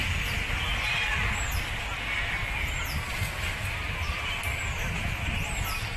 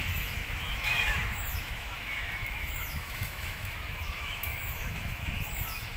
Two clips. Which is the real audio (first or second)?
first